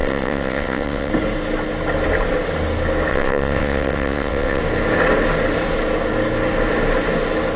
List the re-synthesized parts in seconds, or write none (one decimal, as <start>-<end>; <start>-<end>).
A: 0.0-1.1; 3.1-4.6